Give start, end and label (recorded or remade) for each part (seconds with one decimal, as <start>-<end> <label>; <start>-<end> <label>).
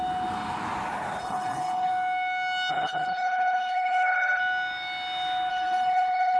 0.0-1.2 recorded; 1.2-1.9 remade; 1.9-2.7 recorded; 2.7-4.4 remade; 4.4-5.5 recorded; 5.5-6.4 remade